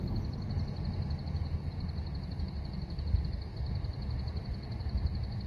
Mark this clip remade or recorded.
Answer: recorded